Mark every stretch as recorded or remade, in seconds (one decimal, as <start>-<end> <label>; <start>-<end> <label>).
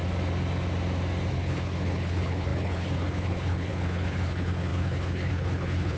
0.0-1.3 recorded; 1.3-6.0 remade